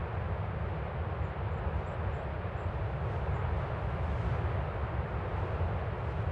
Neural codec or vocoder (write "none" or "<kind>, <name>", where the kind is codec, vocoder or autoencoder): none